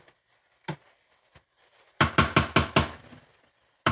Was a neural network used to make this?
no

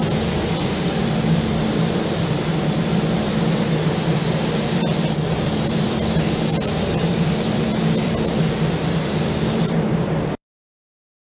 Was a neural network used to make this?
yes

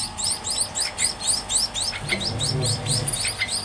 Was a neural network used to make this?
no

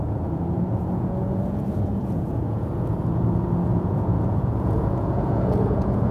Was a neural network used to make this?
yes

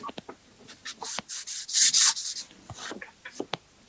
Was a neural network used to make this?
no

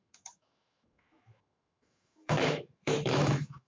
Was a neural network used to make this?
yes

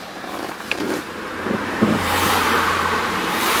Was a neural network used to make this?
yes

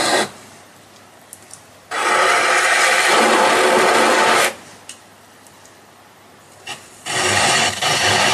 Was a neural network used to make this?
no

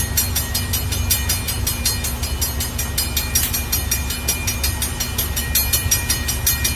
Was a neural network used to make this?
no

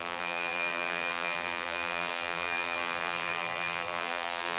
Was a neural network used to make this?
yes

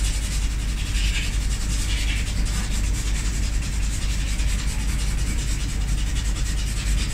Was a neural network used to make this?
no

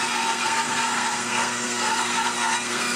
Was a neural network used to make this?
yes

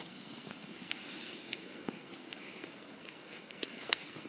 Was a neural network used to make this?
yes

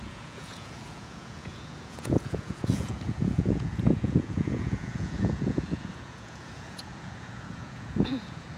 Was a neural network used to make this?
yes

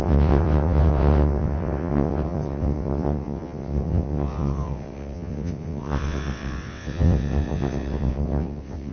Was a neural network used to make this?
yes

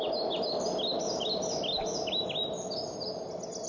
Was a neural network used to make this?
no